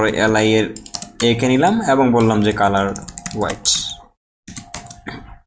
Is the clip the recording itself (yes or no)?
yes